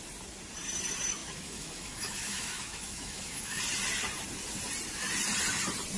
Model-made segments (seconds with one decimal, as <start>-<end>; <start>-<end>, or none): 1.2-3.6